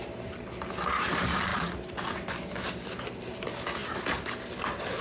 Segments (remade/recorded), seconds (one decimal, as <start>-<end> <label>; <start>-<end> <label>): 0.0-5.0 recorded